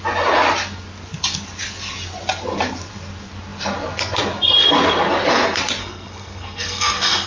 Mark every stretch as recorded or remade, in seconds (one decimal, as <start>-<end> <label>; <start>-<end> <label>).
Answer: 0.0-5.8 recorded; 5.8-7.3 remade